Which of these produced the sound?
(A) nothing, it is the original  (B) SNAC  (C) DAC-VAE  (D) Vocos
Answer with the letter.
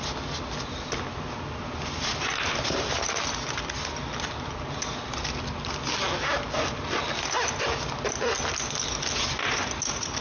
A